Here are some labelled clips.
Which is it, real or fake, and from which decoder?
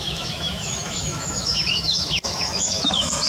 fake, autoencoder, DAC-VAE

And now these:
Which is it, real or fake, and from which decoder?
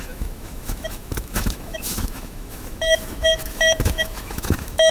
fake, autoencoder, DAC-VAE